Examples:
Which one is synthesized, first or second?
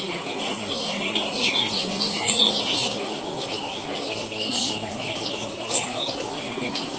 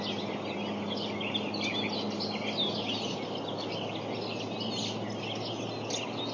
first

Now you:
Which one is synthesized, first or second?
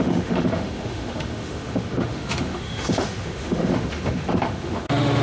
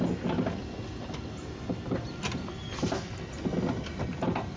first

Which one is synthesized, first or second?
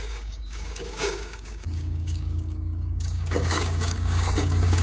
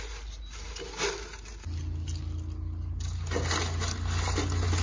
first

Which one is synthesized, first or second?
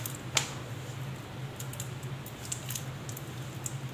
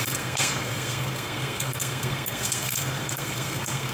second